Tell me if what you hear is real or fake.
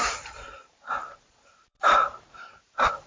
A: fake